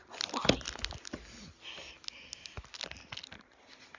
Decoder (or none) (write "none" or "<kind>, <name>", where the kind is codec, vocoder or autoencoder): none